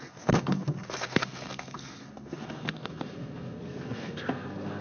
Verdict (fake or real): fake